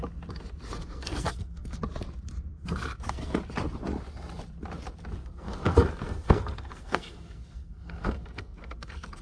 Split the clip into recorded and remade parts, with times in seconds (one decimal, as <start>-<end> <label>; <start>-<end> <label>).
0.0-0.8 recorded; 0.8-1.8 remade; 1.8-2.5 recorded; 2.5-3.4 remade; 3.4-5.2 recorded; 5.2-9.2 remade